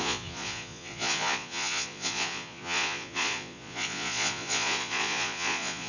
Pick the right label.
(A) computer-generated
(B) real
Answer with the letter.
A